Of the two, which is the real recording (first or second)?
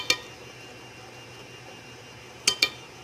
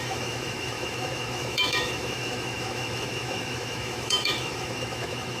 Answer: first